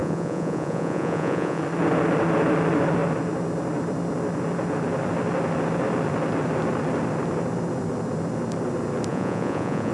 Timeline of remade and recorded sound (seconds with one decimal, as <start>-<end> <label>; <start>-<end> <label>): 0.0-1.6 remade; 1.6-9.1 recorded; 9.1-9.9 remade